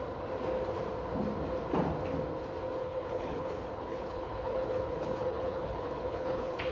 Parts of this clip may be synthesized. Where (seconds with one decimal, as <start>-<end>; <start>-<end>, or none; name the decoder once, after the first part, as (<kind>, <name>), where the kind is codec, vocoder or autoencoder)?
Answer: 2.8-6.7 (codec, HILCodec)